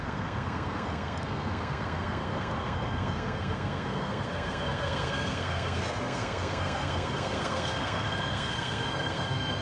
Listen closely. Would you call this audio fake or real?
fake